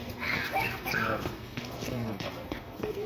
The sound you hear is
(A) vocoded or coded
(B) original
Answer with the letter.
A